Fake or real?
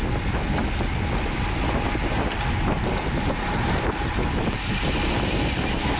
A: real